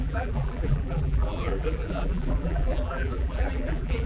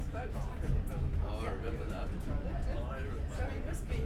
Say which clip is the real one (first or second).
second